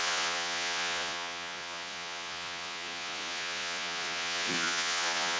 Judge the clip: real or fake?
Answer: fake